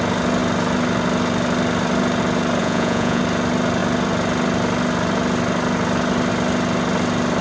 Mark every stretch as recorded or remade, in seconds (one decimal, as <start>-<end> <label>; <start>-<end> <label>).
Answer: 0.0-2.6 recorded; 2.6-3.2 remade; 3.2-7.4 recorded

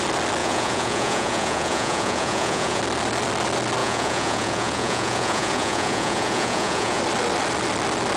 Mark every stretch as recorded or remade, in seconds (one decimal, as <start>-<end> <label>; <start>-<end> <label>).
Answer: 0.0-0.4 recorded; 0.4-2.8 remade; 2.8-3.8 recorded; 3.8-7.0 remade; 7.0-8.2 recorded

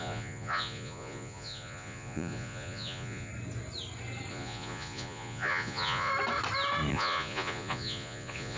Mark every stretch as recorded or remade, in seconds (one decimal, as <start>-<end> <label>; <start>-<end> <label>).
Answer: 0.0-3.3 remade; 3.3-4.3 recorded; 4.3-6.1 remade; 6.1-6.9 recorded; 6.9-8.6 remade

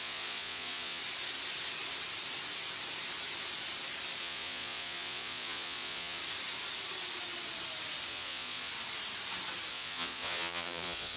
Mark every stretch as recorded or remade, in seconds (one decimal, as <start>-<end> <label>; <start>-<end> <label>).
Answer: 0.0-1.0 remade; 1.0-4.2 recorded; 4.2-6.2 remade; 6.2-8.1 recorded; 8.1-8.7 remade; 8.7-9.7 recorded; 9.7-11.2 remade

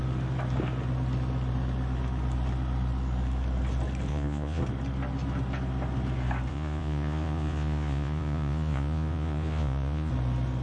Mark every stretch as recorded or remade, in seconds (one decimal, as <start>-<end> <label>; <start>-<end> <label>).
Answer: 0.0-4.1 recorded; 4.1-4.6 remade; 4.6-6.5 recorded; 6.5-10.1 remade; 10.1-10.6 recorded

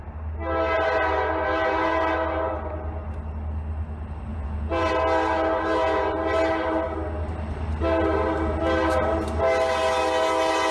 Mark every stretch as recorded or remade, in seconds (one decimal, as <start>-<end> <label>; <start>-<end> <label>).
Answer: 0.0-4.3 recorded; 4.3-4.9 remade; 4.9-10.7 recorded